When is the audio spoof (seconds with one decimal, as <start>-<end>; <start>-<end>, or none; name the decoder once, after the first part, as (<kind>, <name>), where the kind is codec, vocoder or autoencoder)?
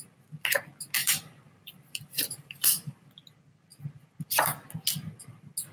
1.0-3.1 (vocoder, BigVGAN v2)